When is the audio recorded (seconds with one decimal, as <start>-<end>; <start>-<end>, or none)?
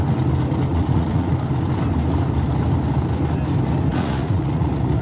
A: 0.0-0.7; 1.3-3.9